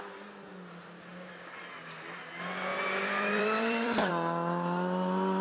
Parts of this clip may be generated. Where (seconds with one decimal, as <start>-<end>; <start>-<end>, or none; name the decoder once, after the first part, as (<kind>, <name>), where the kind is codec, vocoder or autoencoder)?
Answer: 2.7-4.1 (vocoder, BigVGAN v2)